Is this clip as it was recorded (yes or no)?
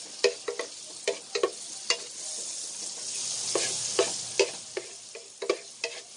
yes